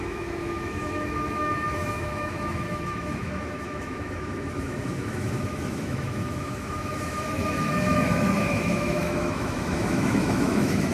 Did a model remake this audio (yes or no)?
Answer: yes